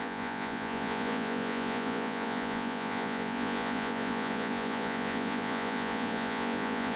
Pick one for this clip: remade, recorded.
remade